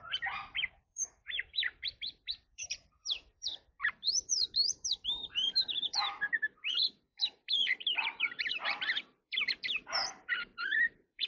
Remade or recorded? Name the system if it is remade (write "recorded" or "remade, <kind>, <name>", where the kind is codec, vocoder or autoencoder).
remade, vocoder, BigVGAN v2